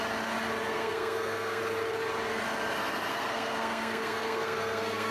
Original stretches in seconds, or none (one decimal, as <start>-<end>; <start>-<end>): 0.0-0.7; 1.6-3.1